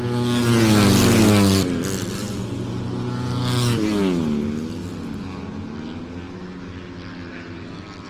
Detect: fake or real real